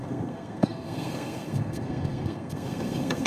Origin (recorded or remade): remade